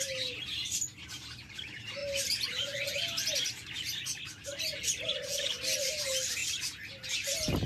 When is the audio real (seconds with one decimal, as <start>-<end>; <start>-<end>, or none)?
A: 0.0-7.7